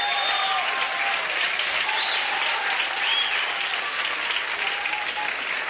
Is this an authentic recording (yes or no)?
yes